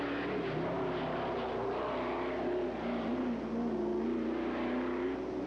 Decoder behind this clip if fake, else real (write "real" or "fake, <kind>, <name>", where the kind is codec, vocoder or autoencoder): real